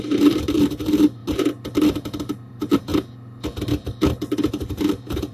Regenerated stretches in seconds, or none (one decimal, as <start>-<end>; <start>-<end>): 0.0-1.2; 2.5-2.9; 4.2-5.3